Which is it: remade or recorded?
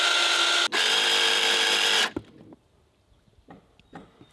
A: recorded